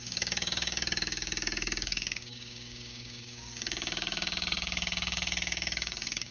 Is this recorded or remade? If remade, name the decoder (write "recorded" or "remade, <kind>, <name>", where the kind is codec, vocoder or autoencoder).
remade, codec, DAC